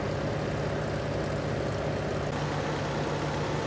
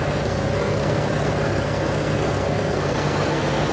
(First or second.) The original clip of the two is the first